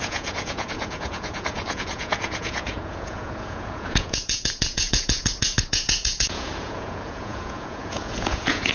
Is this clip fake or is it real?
fake